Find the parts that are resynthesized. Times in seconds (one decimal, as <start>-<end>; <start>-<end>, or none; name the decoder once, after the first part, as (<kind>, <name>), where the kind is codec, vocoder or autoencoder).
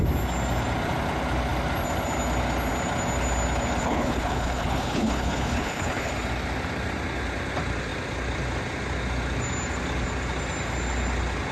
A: 3.8-6.1 (codec, HILCodec)